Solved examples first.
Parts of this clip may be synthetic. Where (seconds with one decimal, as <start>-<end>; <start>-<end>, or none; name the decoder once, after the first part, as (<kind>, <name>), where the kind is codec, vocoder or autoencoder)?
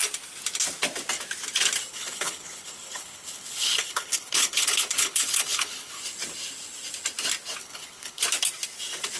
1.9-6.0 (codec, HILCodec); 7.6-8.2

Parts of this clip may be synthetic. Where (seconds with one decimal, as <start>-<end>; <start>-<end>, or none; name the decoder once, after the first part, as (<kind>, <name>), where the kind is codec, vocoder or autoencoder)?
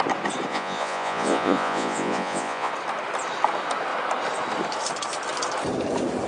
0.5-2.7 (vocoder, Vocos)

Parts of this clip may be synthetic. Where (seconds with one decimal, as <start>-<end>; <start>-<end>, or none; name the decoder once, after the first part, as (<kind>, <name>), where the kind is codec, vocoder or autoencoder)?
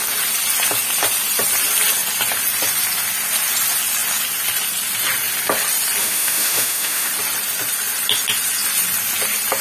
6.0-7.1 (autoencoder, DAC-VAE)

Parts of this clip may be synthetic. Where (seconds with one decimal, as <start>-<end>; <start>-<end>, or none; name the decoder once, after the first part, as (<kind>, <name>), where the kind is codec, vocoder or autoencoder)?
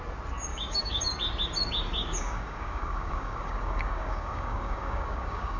0.5-1.0 (codec, DAC); 2.0-5.6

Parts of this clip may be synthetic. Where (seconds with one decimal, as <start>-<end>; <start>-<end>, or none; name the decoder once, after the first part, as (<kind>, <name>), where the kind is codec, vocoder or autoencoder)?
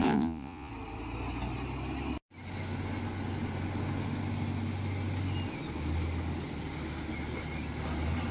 0.0-0.7 (vocoder, Vocos)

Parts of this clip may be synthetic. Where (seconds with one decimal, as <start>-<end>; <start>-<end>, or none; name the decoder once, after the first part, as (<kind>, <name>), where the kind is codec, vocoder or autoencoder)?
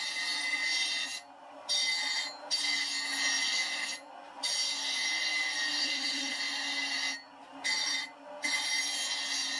5.8-6.4 (codec, SNAC)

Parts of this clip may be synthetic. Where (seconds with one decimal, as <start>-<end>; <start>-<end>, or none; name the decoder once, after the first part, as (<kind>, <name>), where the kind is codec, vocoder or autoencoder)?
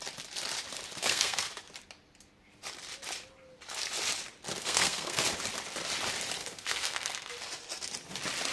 1.0-1.5 (codec, SNAC); 4.6-5.2; 6.4-7.3